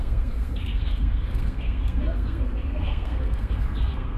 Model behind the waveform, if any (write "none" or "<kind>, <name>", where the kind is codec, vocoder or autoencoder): codec, SNAC